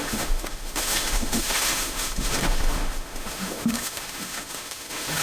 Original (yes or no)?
no